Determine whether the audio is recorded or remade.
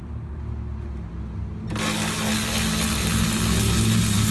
recorded